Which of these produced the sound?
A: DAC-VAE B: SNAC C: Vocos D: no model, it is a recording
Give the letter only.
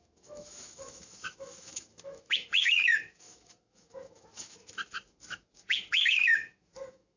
A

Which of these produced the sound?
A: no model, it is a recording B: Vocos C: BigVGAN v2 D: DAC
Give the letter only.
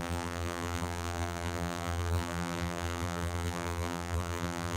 C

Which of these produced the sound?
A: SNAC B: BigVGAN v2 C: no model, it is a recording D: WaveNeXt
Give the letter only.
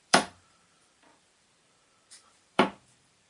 B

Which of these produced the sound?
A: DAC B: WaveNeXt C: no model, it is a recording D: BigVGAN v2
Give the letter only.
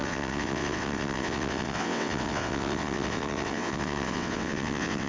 B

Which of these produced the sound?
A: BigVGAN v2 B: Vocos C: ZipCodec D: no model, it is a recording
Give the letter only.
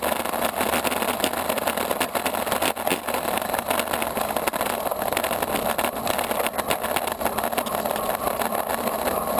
D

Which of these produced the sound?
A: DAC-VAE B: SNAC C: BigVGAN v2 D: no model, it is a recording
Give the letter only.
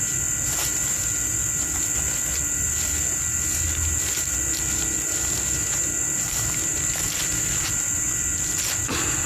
D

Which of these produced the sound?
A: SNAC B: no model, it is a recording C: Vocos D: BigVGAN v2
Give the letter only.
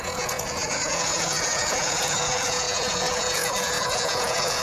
C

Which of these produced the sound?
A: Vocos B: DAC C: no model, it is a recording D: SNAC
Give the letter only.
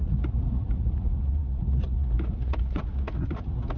A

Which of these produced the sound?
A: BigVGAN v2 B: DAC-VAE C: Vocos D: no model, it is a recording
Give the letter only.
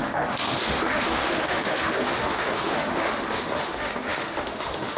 B